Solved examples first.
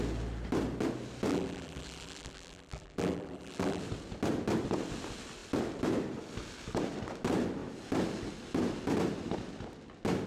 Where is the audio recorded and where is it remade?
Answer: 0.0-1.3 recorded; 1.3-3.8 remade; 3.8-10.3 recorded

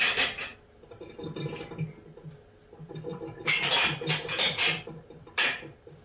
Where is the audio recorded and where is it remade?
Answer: 0.0-6.0 recorded

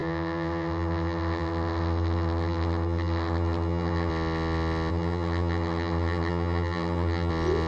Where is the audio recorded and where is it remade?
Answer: 0.0-4.1 remade; 4.1-4.9 recorded; 4.9-7.3 remade; 7.3-7.7 recorded

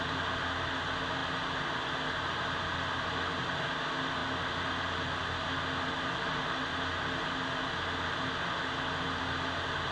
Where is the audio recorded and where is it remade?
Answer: 0.0-9.9 recorded

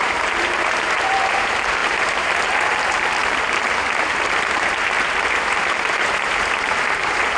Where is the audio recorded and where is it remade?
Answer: 0.0-3.2 remade; 3.2-4.1 recorded; 4.1-7.4 remade

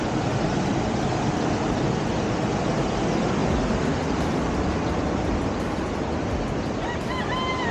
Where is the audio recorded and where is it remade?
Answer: 0.0-7.7 recorded

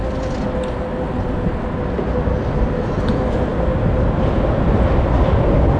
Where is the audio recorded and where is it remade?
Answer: 0.0-5.8 recorded

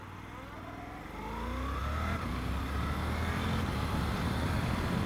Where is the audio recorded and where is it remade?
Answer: 0.0-5.1 recorded